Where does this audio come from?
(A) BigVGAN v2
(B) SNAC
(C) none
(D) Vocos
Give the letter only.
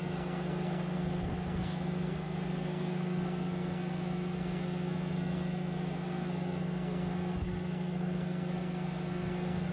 B